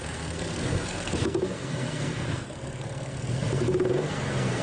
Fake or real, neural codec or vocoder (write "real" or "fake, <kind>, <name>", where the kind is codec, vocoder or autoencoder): fake, codec, SNAC